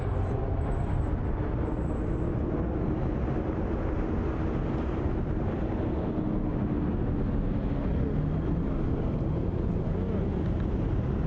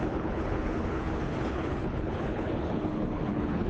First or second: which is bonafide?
first